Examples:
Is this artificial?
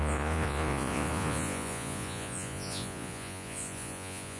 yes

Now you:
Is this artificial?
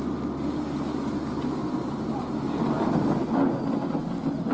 no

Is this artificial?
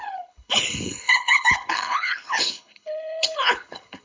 yes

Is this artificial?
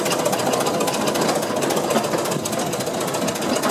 no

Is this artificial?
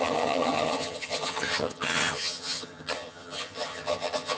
yes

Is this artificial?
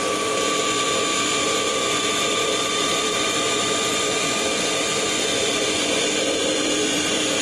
yes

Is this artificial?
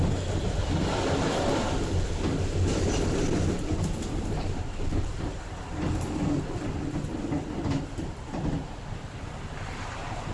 no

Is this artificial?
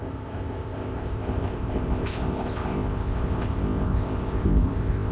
yes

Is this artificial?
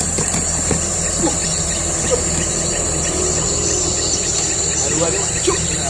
no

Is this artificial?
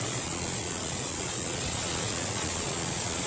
yes